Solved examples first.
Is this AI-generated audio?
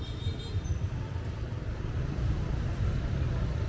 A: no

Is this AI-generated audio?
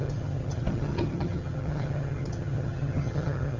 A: yes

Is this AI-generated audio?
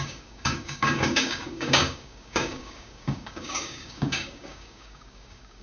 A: yes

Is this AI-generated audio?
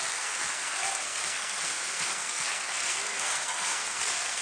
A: yes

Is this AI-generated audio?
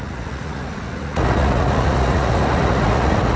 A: yes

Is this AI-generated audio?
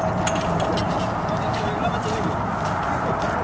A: no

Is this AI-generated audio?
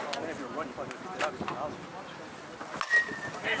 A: no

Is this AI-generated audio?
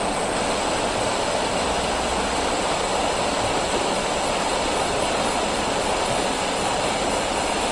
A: no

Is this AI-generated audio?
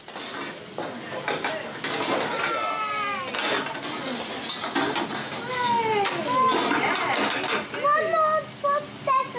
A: no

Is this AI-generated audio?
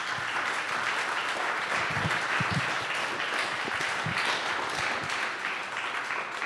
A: no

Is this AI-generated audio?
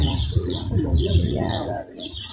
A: yes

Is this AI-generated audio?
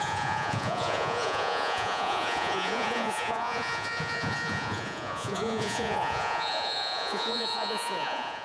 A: yes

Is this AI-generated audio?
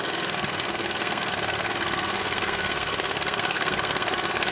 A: yes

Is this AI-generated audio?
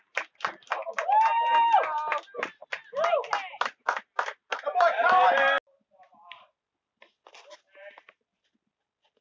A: no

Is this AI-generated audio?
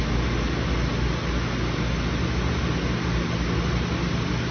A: no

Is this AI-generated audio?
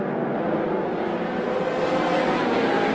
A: no